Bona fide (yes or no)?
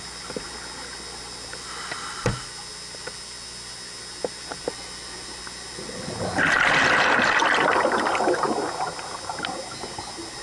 yes